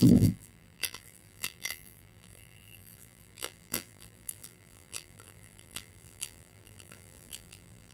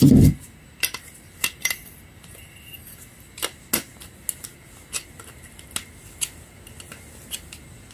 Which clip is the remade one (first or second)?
first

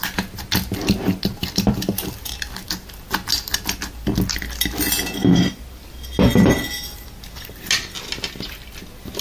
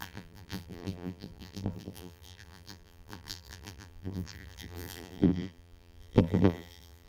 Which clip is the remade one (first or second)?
second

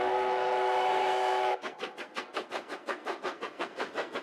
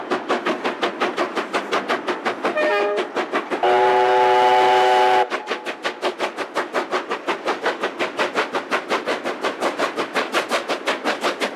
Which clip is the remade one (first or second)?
first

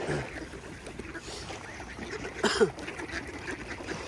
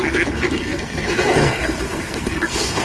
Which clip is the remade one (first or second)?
second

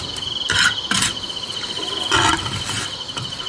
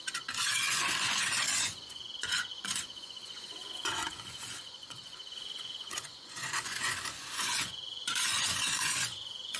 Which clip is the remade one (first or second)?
second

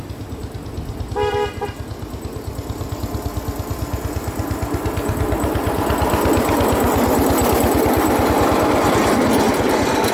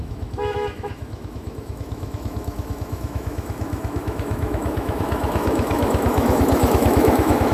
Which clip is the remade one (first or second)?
second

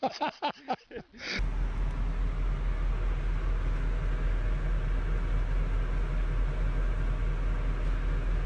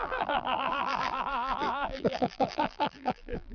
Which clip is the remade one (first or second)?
second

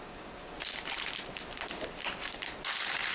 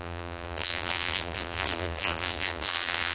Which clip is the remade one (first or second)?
second